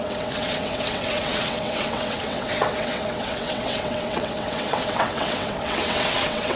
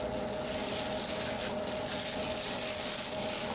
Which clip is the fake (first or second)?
first